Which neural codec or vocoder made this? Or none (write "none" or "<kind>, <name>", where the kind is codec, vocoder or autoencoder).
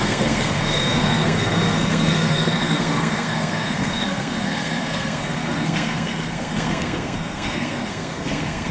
codec, SNAC